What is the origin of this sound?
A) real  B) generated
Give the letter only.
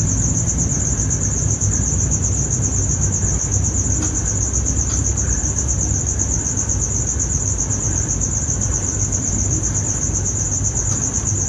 A